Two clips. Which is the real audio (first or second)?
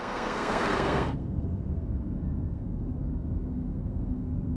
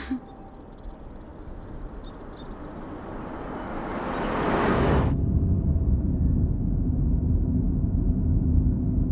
second